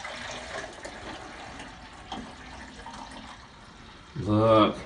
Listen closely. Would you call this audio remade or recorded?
recorded